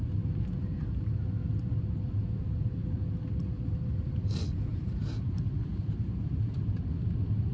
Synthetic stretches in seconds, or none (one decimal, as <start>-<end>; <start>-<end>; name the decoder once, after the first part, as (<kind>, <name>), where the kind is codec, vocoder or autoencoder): 4.7-6.6 (vocoder, BigVGAN v2)